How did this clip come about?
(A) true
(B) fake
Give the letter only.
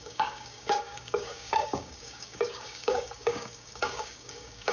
B